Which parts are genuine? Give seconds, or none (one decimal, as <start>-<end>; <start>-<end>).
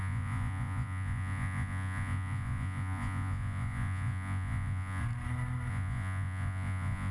5.0-5.7